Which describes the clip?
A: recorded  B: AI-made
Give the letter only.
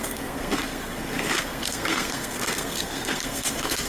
B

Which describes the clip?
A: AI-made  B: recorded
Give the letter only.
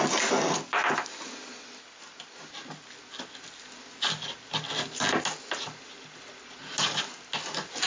B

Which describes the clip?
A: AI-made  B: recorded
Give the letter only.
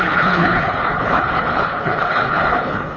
A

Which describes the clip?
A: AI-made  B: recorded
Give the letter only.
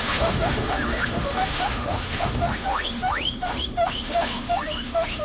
A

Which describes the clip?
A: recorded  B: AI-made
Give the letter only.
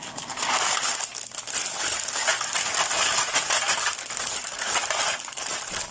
A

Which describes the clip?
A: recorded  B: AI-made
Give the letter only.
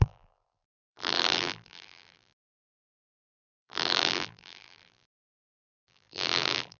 B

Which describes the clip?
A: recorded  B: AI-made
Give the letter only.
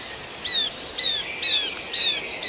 A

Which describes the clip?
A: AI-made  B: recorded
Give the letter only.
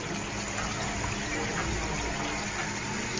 B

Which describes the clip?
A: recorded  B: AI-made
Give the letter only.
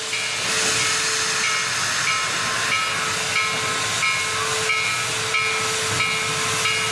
A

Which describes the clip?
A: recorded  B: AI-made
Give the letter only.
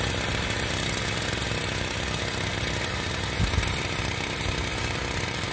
A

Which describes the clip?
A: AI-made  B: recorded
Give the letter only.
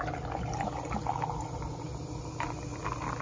B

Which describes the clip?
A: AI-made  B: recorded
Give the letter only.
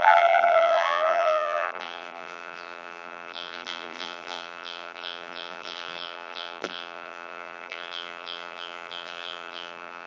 A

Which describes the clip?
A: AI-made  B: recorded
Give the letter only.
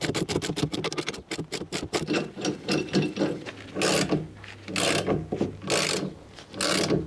B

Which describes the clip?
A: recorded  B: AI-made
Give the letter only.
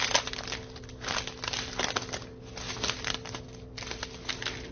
A